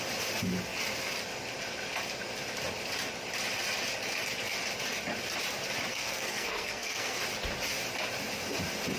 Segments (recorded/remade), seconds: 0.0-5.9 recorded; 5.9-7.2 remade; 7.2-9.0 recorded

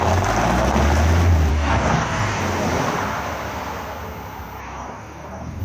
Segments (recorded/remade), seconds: 0.0-1.5 recorded; 1.5-2.4 remade; 2.4-4.6 recorded; 4.6-5.6 remade

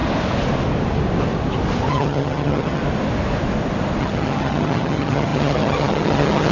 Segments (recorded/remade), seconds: 0.0-1.9 recorded; 1.9-2.8 remade; 2.8-4.0 recorded; 4.0-6.5 remade

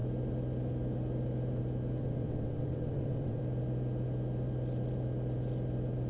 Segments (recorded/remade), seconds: 0.0-2.0 recorded; 2.0-3.4 remade; 3.4-6.1 recorded

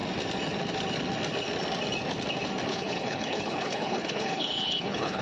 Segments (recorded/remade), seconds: 0.0-2.7 recorded; 2.7-5.2 remade

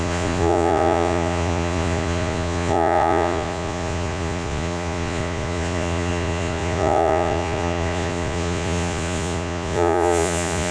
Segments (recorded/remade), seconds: 0.0-10.7 remade

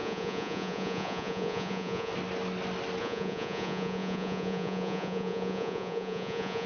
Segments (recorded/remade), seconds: 0.0-2.1 remade; 2.1-3.0 recorded; 3.0-6.7 remade

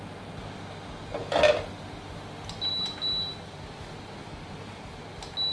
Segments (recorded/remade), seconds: 0.0-4.2 recorded; 4.2-4.9 remade; 4.9-5.5 recorded